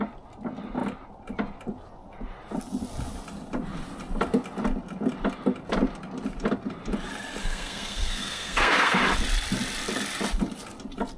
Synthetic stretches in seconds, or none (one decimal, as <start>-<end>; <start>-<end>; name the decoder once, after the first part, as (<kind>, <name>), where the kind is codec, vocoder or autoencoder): 7.4-9.0 (codec, SNAC)